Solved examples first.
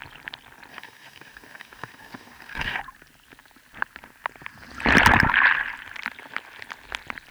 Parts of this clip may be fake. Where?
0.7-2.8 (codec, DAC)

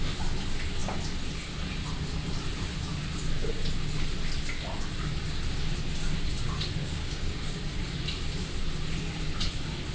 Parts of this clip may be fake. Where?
6.8-7.6 (codec, DAC)

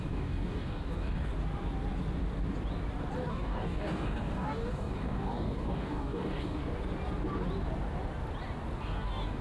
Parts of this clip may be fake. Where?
0.0-1.3 (codec, DAC); 3.3-6.6; 8.8-9.4

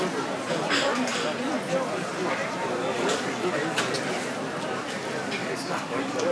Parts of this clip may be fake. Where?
2.8-3.8 (codec, DAC); 5.4-6.3